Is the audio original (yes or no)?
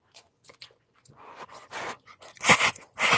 no